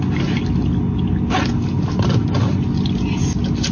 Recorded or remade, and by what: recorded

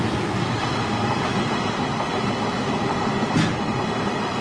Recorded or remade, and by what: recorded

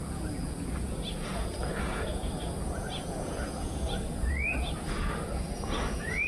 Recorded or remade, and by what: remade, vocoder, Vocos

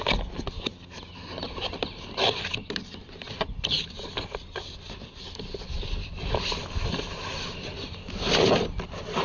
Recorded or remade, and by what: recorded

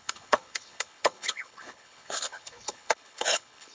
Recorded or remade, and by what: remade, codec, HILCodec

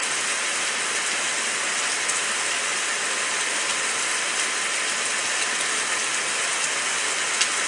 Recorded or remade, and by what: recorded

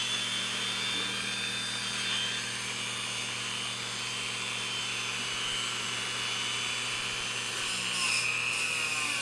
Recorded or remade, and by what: remade, vocoder, BigVGAN v2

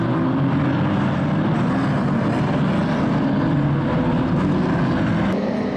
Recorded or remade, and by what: recorded